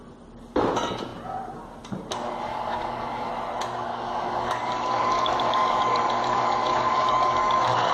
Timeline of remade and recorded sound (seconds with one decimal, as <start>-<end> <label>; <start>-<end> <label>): 0.0-2.5 recorded; 2.5-3.3 remade; 3.3-3.9 recorded; 3.9-7.9 remade